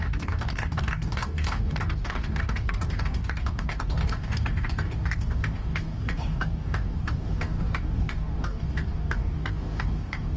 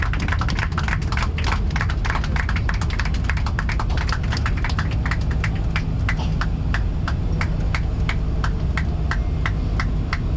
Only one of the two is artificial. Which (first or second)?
first